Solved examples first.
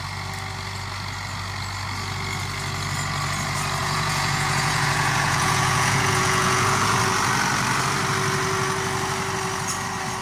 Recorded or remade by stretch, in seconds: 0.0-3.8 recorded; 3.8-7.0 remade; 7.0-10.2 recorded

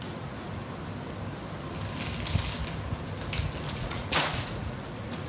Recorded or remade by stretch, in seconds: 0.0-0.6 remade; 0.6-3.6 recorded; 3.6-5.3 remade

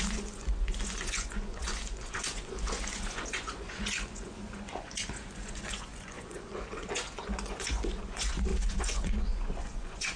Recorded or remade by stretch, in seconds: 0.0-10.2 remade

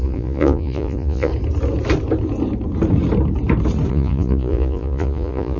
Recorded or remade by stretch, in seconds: 0.0-1.3 remade; 1.3-3.9 recorded; 3.9-5.6 remade

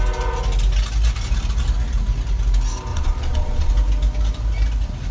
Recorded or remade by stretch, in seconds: 0.0-2.9 recorded; 2.9-3.7 remade; 3.7-5.1 recorded

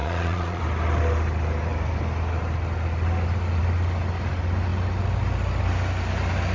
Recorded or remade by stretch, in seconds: 0.0-0.6 remade; 0.6-6.5 recorded

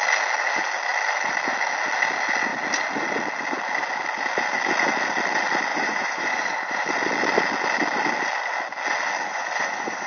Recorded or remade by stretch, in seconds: 0.0-5.7 recorded; 5.7-6.7 remade; 6.7-9.3 recorded; 9.3-10.1 remade

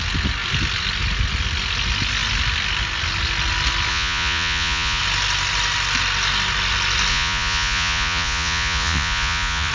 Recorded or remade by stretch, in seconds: 0.0-3.9 recorded; 3.9-5.0 remade; 5.0-7.1 recorded; 7.1-9.7 remade